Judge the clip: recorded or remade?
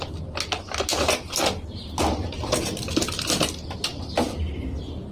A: recorded